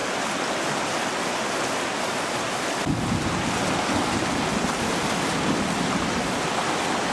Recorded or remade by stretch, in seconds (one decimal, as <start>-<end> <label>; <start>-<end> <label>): 0.0-7.1 recorded

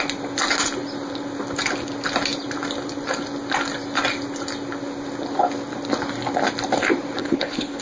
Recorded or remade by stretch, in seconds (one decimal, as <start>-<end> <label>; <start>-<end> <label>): 0.0-7.2 recorded; 7.2-7.8 remade